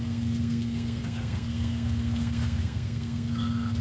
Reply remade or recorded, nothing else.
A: remade